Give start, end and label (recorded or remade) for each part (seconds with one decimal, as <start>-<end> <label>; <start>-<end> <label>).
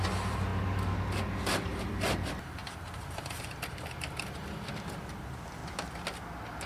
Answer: 0.0-0.5 remade; 0.5-1.4 recorded; 1.4-5.6 remade; 5.6-6.7 recorded